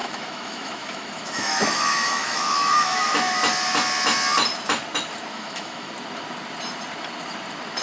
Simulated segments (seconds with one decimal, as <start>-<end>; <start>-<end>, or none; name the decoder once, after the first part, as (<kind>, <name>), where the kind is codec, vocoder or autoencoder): 0.0-3.4 (autoencoder, DAC-VAE); 5.3-5.9